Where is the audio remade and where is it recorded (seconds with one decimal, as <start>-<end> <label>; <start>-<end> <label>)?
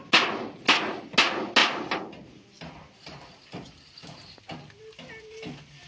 0.0-5.9 recorded